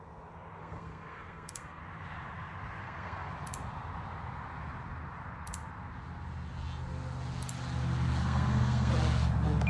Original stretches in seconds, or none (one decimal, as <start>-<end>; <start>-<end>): 0.0-0.6; 1.8-2.8; 3.3-8.2; 8.9-9.7